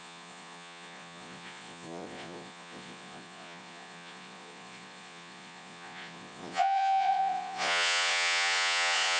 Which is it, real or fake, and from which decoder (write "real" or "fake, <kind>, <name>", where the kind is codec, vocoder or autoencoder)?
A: fake, vocoder, Vocos